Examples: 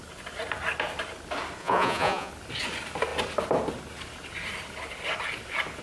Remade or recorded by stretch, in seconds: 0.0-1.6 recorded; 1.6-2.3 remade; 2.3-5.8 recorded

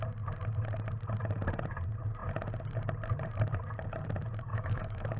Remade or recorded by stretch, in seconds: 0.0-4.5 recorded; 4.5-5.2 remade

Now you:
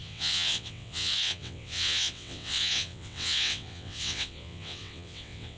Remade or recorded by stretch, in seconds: 0.0-5.6 remade

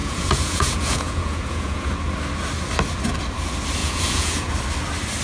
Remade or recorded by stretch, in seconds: 0.0-1.9 remade; 1.9-3.8 recorded; 3.8-4.5 remade; 4.5-5.2 recorded

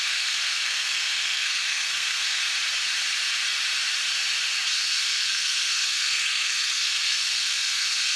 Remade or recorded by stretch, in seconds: 0.0-2.4 remade; 2.4-4.8 recorded; 4.8-8.2 remade

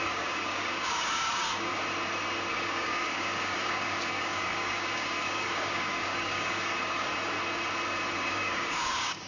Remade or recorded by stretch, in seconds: 0.0-1.7 remade; 1.7-2.5 recorded; 2.5-7.1 remade; 7.1-8.1 recorded; 8.1-9.3 remade